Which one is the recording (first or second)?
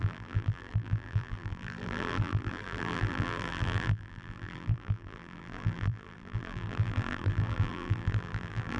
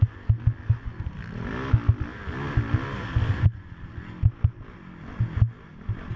second